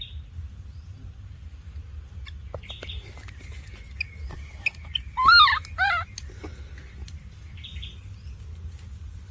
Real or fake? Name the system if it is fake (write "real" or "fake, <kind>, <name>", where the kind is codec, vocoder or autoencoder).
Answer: real